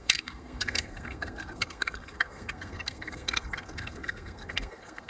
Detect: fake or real fake